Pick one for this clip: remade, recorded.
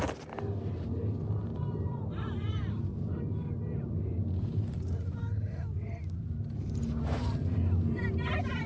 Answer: recorded